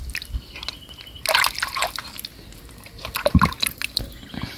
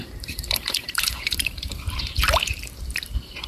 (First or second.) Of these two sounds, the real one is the first